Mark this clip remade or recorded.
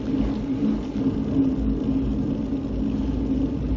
recorded